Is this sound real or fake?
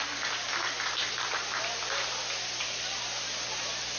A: real